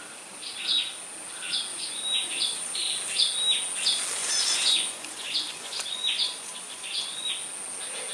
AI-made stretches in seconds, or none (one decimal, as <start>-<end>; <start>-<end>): 1.7-2.8; 4.2-7.3

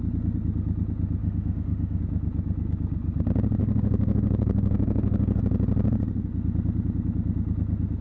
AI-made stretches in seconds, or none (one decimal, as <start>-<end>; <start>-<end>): 1.2-2.0; 3.6-5.4

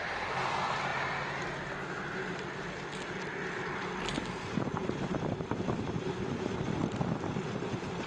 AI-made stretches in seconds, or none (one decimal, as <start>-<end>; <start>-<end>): 0.0-0.9; 4.5-6.8; 7.4-8.1

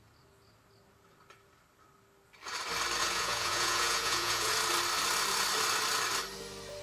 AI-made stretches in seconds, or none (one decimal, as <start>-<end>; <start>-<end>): 3.0-4.5

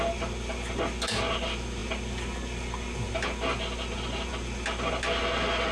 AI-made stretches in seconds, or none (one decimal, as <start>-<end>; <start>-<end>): none

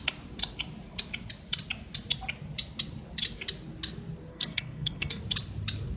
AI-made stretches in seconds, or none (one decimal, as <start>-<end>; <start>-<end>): 4.3-5.2

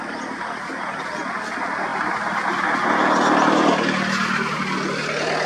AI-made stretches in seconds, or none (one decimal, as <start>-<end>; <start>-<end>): none